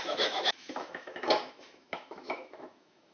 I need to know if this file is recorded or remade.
remade